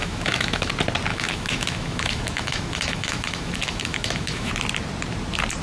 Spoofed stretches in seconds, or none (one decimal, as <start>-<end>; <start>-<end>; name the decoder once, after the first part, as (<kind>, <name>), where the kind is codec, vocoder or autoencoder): 0.0-0.7 (autoencoder, DAC-VAE); 1.1-4.5